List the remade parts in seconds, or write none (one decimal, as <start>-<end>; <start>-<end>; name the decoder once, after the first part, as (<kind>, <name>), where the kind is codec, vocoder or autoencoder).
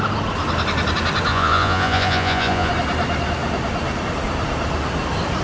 1.3-2.7 (vocoder, Vocos)